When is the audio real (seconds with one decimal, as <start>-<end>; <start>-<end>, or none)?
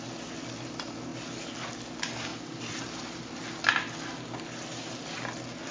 0.0-2.3; 3.3-5.7